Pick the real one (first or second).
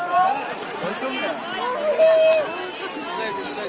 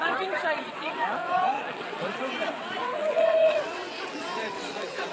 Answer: first